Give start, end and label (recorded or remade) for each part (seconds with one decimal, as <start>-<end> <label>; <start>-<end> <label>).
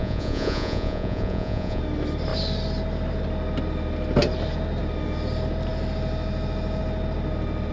0.0-1.8 remade; 1.8-7.7 recorded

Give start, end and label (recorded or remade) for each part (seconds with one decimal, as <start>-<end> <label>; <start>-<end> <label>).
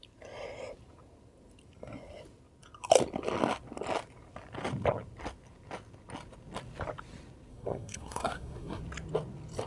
0.0-7.5 recorded; 7.5-8.8 remade; 8.8-9.7 recorded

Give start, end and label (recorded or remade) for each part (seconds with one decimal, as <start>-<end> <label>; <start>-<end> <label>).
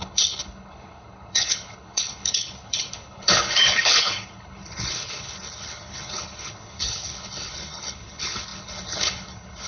0.0-9.7 remade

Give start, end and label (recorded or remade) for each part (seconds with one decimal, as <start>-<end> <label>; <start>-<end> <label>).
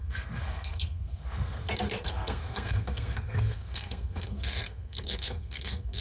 0.0-6.0 remade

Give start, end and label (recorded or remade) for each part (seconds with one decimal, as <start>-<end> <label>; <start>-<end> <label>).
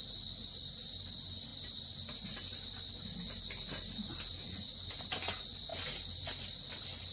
0.0-7.1 recorded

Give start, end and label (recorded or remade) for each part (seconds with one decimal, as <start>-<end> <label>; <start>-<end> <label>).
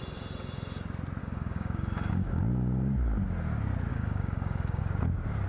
0.0-1.2 recorded; 1.2-2.4 remade; 2.4-3.9 recorded; 3.9-4.8 remade; 4.8-5.5 recorded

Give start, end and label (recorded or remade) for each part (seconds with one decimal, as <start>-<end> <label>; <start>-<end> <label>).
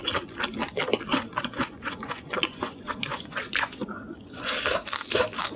0.0-1.1 recorded; 1.1-4.5 remade; 4.5-5.6 recorded